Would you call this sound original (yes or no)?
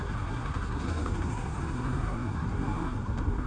no